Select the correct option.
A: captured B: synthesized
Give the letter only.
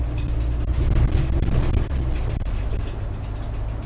A